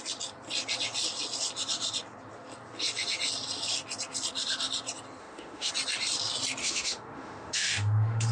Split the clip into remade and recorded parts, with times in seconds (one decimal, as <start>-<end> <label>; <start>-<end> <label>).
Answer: 0.0-5.2 recorded; 5.2-5.7 remade; 5.7-6.6 recorded; 6.6-8.3 remade